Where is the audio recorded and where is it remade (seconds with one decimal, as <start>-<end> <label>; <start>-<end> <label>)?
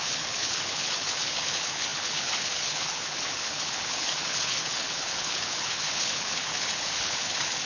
0.0-7.7 remade